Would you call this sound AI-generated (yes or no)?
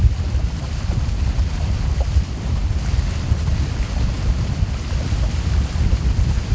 no